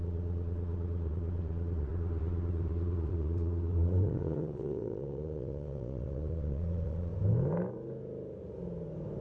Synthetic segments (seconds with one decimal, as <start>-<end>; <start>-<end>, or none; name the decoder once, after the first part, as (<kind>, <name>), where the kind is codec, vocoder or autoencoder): 0.0-7.1 (vocoder, Vocos)